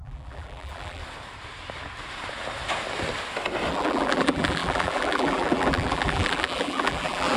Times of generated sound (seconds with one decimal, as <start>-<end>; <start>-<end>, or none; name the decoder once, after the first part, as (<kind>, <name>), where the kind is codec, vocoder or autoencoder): 0.0-1.0 (vocoder, BigVGAN v2); 3.7-7.4